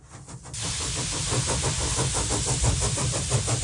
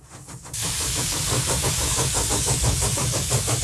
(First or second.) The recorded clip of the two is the first